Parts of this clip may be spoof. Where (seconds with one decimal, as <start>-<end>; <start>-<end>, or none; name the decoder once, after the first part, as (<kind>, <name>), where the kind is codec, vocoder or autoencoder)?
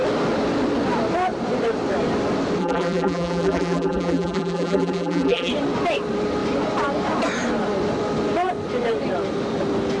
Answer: 2.6-5.5 (vocoder, BigVGAN v2)